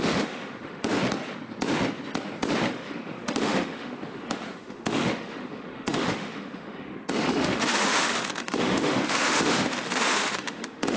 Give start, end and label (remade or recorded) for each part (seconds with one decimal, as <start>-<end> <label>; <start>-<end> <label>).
0.0-0.9 remade; 0.9-2.7 recorded; 2.7-11.0 remade